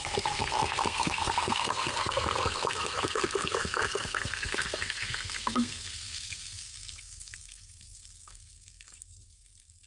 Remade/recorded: remade